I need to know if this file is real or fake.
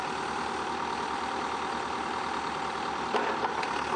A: fake